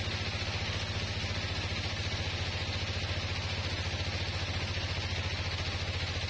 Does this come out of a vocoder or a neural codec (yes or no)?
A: no